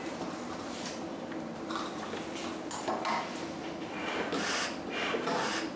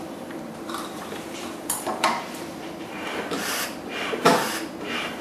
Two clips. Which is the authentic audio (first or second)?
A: first